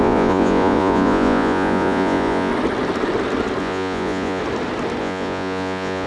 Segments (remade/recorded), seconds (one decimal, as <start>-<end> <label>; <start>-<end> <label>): 0.0-2.5 remade; 2.5-3.6 recorded; 3.6-4.4 remade; 4.4-5.0 recorded; 5.0-6.1 remade

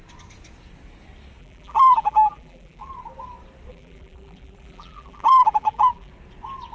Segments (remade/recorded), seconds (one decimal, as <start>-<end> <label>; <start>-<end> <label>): 0.0-1.4 recorded; 1.4-2.9 remade; 2.9-3.7 recorded; 3.7-6.1 remade; 6.1-6.7 recorded

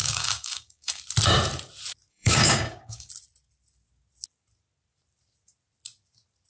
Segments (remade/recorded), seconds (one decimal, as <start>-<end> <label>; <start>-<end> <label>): 0.0-1.0 remade; 1.0-2.1 recorded; 2.1-3.1 remade; 3.1-6.5 recorded

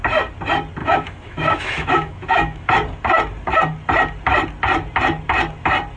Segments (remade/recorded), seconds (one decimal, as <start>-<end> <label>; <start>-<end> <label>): 0.0-0.8 recorded; 0.8-2.7 remade; 2.7-6.0 recorded